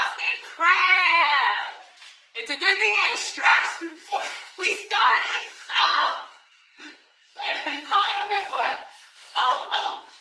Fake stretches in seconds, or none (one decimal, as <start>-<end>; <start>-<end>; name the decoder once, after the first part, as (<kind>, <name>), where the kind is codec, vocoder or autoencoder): 0.0-1.8 (codec, SNAC); 2.5-10.2